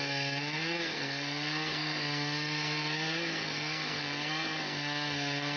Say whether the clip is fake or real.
fake